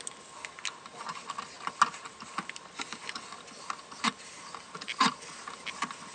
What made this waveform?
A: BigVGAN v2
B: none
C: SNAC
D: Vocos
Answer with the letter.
B